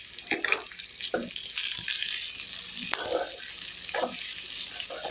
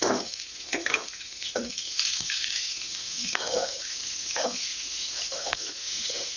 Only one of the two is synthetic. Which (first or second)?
second